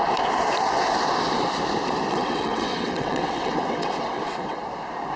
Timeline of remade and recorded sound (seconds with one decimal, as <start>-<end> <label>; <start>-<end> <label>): 0.0-2.1 recorded; 2.1-4.6 remade; 4.6-5.2 recorded